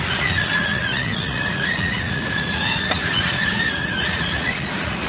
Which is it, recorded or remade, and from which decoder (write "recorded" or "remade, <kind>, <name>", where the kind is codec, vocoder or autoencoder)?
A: remade, vocoder, Vocos